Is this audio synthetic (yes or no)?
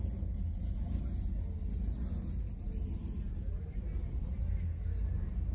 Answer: no